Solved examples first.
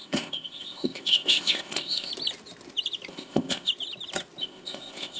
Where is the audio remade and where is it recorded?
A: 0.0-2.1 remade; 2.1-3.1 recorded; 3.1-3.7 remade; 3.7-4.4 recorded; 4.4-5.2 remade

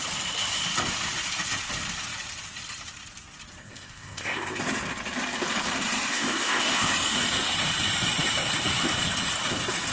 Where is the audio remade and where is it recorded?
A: 0.0-3.6 recorded; 3.6-4.6 remade; 4.6-6.1 recorded; 6.1-6.9 remade; 6.9-9.9 recorded

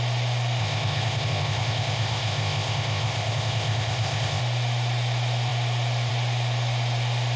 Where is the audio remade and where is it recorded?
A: 0.0-0.6 recorded; 0.6-4.4 remade; 4.4-7.4 recorded

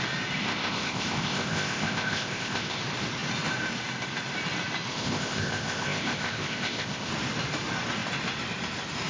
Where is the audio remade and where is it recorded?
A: 0.0-0.4 recorded; 0.4-2.8 remade; 2.8-4.9 recorded; 4.9-7.1 remade; 7.1-9.1 recorded